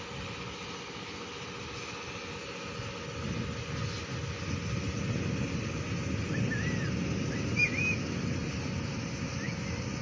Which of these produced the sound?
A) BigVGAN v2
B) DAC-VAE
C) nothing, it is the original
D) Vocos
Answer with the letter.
C